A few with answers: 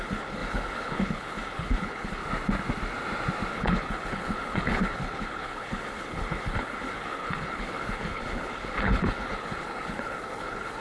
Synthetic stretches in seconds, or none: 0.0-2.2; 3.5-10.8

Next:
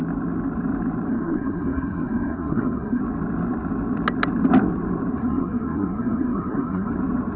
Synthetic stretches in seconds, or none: 1.1-3.0; 5.2-6.9